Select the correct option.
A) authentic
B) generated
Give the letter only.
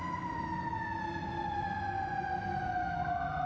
A